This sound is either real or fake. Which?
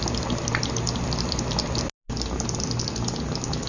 real